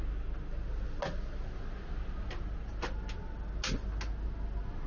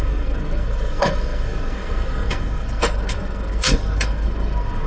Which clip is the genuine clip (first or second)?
first